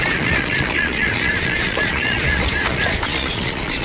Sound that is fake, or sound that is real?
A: fake